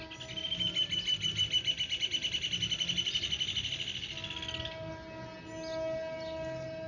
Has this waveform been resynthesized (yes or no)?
no